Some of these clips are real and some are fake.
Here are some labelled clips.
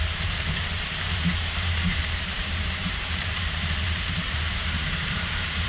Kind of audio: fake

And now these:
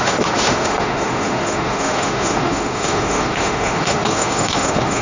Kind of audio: fake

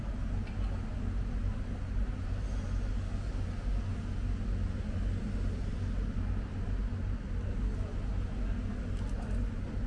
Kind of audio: real